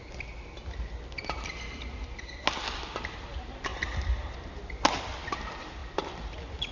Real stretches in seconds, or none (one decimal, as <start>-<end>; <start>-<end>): 0.0-6.7